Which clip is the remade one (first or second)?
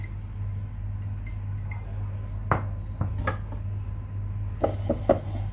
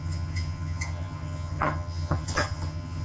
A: second